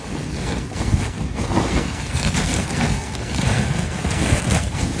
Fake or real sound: fake